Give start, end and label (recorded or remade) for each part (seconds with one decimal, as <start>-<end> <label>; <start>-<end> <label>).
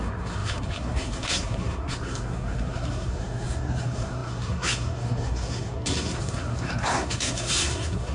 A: 0.0-8.1 remade